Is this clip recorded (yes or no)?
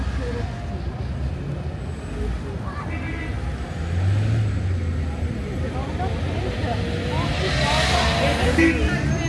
yes